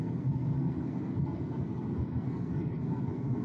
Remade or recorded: remade